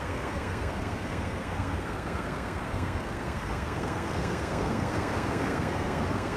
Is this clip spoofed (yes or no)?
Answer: yes